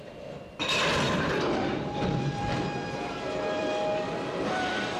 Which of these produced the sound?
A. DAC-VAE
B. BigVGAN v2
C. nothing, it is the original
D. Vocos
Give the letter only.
B